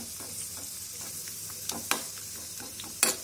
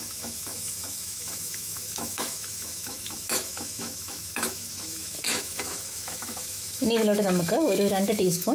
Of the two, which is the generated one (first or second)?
second